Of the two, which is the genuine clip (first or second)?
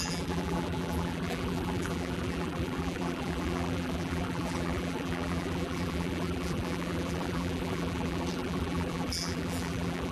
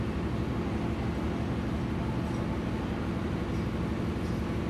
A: second